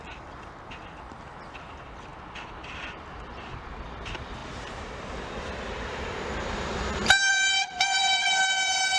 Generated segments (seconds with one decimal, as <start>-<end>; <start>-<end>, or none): 0.0-2.1; 3.8-8.0